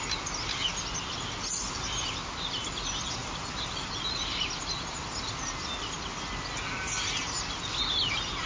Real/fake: real